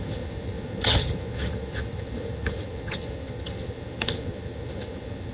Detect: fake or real fake